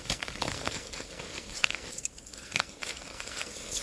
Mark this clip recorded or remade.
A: remade